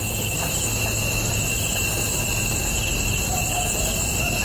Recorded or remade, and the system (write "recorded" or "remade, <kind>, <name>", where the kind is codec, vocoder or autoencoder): recorded